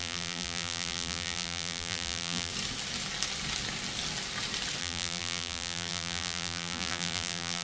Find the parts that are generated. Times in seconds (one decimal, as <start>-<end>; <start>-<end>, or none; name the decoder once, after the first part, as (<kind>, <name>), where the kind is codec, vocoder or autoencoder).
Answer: 0.0-2.5 (vocoder, BigVGAN v2); 4.8-7.6